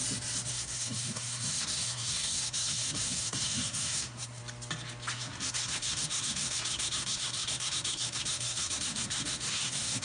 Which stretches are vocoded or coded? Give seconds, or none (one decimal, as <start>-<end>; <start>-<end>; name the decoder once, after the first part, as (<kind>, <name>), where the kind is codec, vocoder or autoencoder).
0.5-4.4 (codec, SNAC); 5.1-10.0

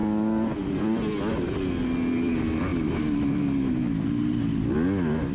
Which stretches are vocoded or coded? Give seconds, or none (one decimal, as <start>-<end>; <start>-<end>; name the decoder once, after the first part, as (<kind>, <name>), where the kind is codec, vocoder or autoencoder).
none

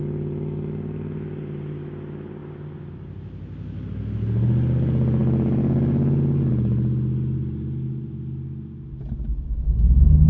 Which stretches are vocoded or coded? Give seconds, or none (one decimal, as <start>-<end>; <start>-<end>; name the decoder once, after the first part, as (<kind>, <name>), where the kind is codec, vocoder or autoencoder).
none

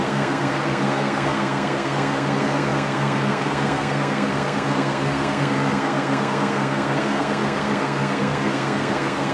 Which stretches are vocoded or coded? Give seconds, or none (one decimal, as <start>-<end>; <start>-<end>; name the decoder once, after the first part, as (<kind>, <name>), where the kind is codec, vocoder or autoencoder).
0.0-9.3 (codec, SNAC)

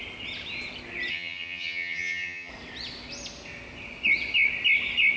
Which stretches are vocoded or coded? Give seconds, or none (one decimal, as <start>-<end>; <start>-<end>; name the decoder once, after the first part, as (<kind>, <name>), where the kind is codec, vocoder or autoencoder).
1.1-2.5 (vocoder, HiFi-GAN)